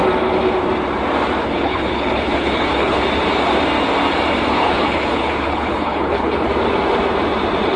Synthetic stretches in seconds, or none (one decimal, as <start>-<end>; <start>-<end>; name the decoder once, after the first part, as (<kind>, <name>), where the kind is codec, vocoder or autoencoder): 1.4-3.0 (codec, HILCodec); 4.5-6.5